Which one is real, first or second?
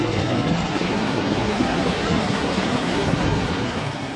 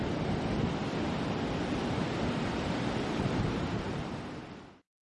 second